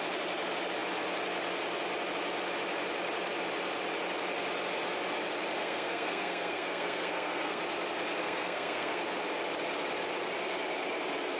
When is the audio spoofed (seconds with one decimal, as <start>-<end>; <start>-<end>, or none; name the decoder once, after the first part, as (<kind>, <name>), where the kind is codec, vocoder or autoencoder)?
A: 5.6-7.6 (codec, SNAC); 8.2-9.0